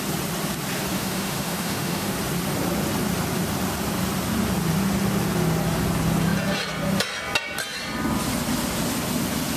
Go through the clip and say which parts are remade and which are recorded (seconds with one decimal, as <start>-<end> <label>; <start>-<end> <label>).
0.0-0.9 recorded; 0.9-2.1 remade; 2.1-9.6 recorded